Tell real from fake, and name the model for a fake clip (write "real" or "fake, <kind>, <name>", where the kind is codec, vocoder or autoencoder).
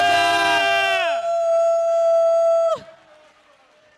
real